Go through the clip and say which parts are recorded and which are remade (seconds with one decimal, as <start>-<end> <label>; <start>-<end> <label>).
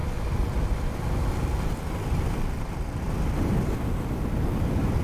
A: 0.0-5.0 recorded